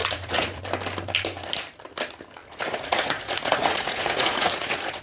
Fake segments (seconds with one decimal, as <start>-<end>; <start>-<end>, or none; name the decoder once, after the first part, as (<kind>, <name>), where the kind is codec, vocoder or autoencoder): 0.0-0.6 (vocoder, Vocos); 2.4-5.0